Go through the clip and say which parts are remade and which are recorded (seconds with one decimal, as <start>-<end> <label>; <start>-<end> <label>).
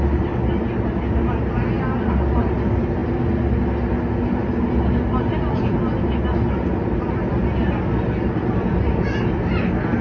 0.0-10.0 recorded